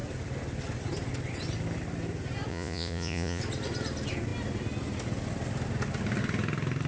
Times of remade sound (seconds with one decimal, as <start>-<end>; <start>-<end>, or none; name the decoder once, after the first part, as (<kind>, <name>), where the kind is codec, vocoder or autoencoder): 2.5-3.4 (vocoder, Vocos)